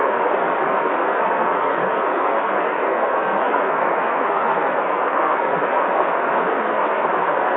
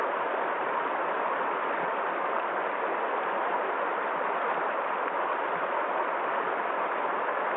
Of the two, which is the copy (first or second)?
first